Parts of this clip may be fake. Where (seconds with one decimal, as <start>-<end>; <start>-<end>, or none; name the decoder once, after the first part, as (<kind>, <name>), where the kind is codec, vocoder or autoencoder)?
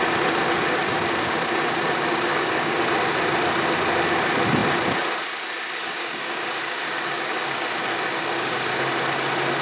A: 2.3-2.8 (codec, DAC); 5.8-8.9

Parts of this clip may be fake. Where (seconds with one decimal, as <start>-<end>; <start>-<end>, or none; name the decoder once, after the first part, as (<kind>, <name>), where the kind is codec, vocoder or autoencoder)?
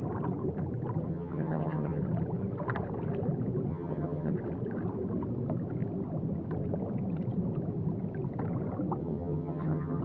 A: 1.1-2.0 (vocoder, HiFi-GAN); 3.7-4.3; 9.0-10.0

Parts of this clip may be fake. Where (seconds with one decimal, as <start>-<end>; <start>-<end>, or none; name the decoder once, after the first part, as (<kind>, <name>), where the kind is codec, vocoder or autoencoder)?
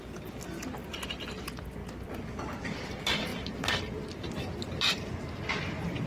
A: none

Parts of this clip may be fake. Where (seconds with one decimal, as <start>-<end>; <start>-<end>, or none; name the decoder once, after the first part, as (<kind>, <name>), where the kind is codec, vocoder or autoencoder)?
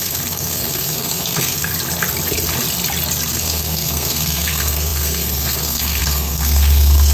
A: 0.0-1.7 (codec, SNAC); 3.3-7.1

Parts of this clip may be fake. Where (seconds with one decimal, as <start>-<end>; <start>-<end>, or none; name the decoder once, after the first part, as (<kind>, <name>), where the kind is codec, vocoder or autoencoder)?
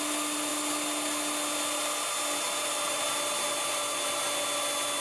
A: none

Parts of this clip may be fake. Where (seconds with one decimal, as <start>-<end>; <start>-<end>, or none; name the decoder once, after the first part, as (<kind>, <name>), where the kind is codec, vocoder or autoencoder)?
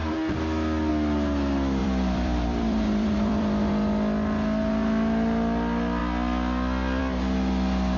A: 1.8-3.7 (vocoder, BigVGAN v2)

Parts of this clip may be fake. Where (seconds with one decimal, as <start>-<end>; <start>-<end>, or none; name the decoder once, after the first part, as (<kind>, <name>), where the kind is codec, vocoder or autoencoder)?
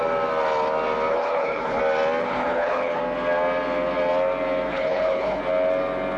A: 1.1-1.8 (codec, HILCodec); 2.2-3.0; 4.7-5.4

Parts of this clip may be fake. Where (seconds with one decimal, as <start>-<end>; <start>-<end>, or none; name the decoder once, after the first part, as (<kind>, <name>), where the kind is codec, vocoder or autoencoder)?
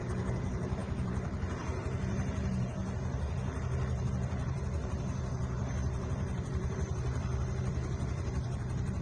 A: 0.0-9.0 (vocoder, BigVGAN v2)